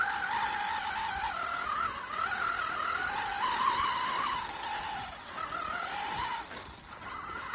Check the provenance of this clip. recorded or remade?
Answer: recorded